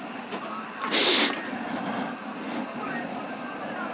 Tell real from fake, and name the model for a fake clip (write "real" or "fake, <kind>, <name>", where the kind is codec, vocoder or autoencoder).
real